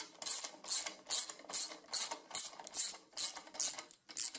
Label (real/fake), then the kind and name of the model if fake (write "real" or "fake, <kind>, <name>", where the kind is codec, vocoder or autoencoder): real